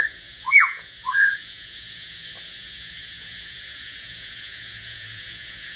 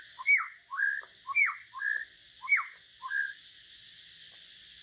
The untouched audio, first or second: second